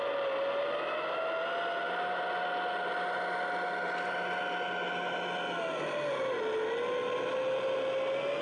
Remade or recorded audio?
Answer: recorded